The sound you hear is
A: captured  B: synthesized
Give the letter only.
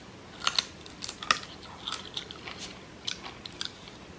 A